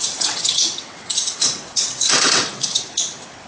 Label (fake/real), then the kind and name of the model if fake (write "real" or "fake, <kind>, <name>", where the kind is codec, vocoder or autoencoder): fake, vocoder, WaveNeXt